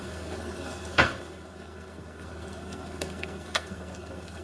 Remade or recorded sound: remade